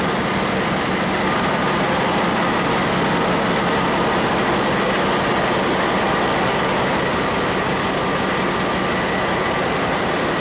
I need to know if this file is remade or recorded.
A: recorded